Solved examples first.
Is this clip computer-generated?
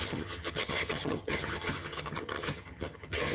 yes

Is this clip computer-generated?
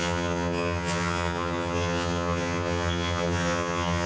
yes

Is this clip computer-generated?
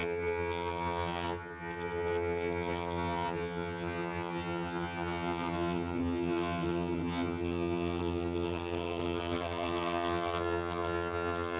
yes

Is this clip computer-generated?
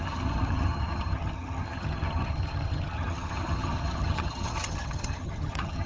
yes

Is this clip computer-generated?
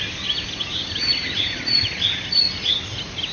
no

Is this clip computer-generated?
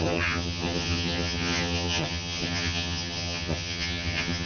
yes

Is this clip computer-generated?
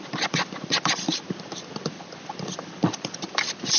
no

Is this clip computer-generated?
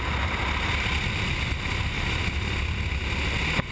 no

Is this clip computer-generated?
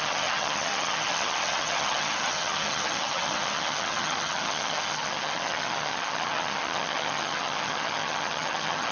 yes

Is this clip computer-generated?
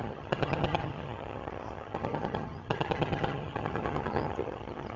yes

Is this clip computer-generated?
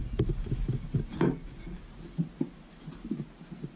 no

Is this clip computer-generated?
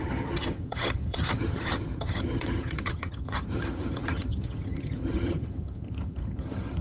yes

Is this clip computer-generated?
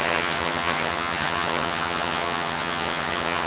yes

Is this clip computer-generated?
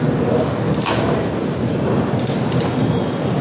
no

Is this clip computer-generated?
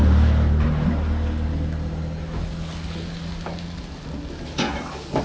no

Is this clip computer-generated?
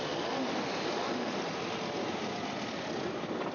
no